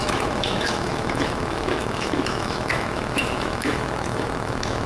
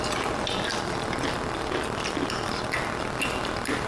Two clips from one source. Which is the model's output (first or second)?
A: first